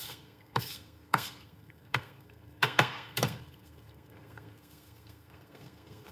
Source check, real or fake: fake